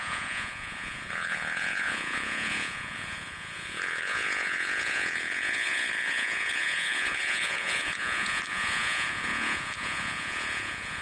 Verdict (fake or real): fake